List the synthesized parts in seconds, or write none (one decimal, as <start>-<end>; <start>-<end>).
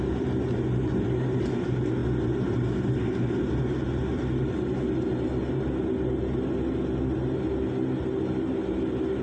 none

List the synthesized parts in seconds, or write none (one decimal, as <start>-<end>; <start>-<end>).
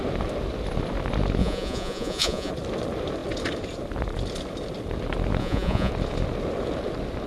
1.4-2.5; 5.4-5.9